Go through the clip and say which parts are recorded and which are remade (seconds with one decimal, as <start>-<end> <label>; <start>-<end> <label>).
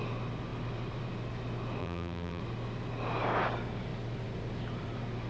0.0-1.8 recorded; 1.8-2.4 remade; 2.4-5.3 recorded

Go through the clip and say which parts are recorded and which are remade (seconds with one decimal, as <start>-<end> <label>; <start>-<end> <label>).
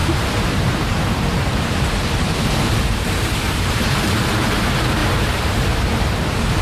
0.0-4.0 remade; 4.0-5.0 recorded; 5.0-6.6 remade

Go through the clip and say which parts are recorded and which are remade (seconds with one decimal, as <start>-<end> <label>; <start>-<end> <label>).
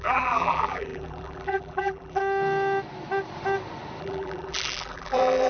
0.0-2.2 remade; 2.2-4.0 recorded; 4.0-5.5 remade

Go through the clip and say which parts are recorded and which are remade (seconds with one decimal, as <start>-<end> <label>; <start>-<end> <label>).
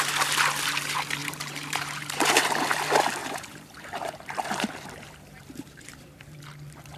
0.0-1.2 recorded; 1.2-2.5 remade; 2.5-3.2 recorded; 3.2-6.4 remade; 6.4-7.0 recorded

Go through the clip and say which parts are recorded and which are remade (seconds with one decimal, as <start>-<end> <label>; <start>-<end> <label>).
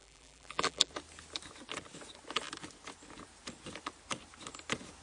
0.0-0.9 remade; 0.9-5.0 recorded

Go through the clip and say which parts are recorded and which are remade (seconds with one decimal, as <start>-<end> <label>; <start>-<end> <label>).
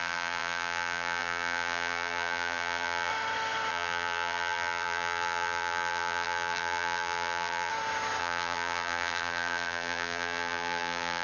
0.0-3.1 remade; 3.1-3.7 recorded; 3.7-7.7 remade; 7.7-8.2 recorded; 8.2-11.2 remade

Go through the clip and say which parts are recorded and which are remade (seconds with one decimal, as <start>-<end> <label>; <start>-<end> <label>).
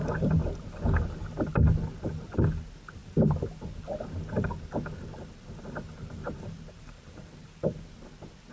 0.0-0.7 remade; 0.7-6.2 recorded; 6.2-7.9 remade; 7.9-8.5 recorded